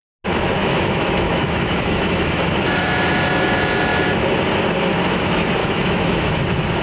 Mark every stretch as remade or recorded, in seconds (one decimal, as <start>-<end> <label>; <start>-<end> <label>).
0.0-0.6 recorded; 0.6-3.0 remade; 3.0-5.6 recorded; 5.6-6.3 remade; 6.3-6.8 recorded